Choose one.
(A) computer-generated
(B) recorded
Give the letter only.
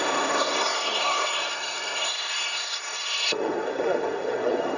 A